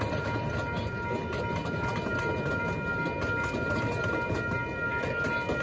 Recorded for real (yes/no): yes